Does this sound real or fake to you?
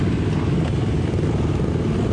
real